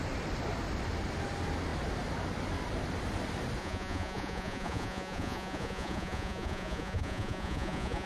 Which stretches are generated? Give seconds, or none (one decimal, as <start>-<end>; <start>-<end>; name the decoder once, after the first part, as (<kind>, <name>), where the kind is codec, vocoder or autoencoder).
3.6-8.1 (vocoder, Vocos)